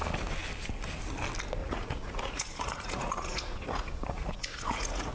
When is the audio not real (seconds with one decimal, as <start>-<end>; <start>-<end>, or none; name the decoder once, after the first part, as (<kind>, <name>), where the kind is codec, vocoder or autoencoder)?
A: 1.6-5.1 (vocoder, Vocos)

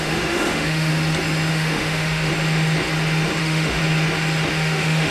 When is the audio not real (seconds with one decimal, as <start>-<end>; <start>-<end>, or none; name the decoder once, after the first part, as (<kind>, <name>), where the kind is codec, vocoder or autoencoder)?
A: 0.0-0.9 (autoencoder, DAC-VAE); 1.5-2.3; 3.4-3.8; 4.5-5.1

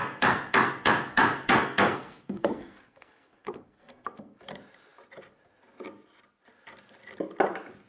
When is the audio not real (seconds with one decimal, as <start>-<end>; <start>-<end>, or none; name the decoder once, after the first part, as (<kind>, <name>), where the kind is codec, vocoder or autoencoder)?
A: 0.0-4.4 (codec, SNAC)

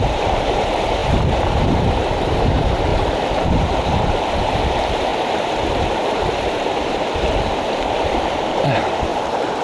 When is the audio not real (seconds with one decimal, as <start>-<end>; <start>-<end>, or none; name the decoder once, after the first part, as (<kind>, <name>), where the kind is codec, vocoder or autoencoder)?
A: 0.0-9.1 (vocoder, BigVGAN v2)

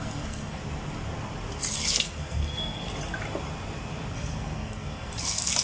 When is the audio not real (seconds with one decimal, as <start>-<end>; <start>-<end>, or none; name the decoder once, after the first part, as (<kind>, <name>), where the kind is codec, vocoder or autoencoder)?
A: 0.0-0.6 (codec, SNAC); 1.7-2.9; 4.1-5.6